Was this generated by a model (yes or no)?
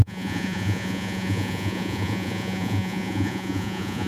yes